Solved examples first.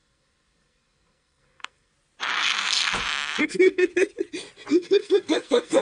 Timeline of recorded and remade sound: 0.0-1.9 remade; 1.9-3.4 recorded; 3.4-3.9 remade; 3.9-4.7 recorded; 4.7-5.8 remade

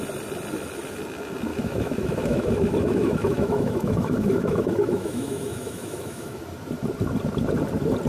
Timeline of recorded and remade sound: 0.0-1.5 recorded; 1.5-6.4 remade; 6.4-8.1 recorded

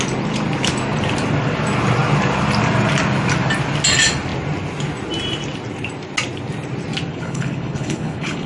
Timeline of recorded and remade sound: 0.0-7.1 recorded; 7.1-8.5 remade

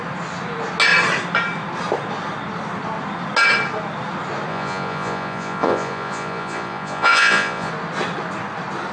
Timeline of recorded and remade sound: 0.0-4.5 recorded; 4.5-7.7 remade; 7.7-8.9 recorded

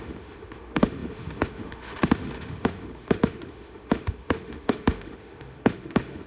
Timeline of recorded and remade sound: 0.0-6.3 remade

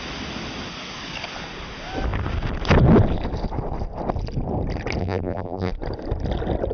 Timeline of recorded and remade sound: 0.0-5.0 recorded; 5.0-5.7 remade; 5.7-6.7 recorded

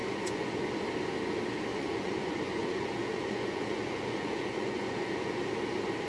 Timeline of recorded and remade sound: 0.0-0.7 remade; 0.7-1.7 recorded; 1.7-5.4 remade; 5.4-6.1 recorded

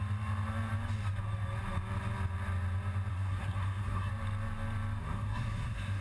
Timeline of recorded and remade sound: 0.0-3.1 recorded; 3.1-4.1 remade; 4.1-5.0 recorded; 5.0-6.0 remade